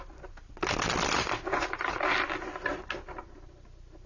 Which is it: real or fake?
real